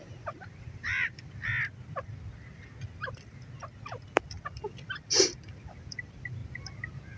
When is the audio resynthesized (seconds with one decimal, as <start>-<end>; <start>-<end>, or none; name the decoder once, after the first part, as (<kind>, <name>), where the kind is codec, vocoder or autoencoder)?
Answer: 0.0-1.5 (vocoder, BigVGAN v2); 5.8-6.4